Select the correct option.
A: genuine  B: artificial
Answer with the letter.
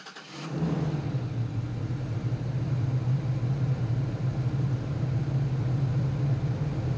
A